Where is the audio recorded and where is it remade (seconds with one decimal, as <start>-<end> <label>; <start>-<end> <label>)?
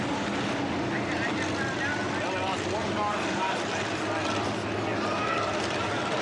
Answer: 0.0-6.2 recorded